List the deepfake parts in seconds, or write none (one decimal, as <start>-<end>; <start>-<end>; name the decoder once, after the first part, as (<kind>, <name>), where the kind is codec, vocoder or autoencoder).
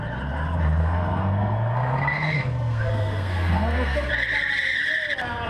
0.8-4.1 (codec, SNAC)